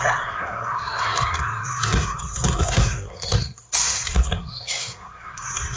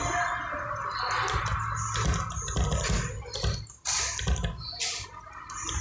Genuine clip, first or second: second